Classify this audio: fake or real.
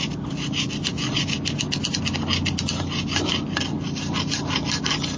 real